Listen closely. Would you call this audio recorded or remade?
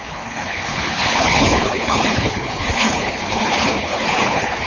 remade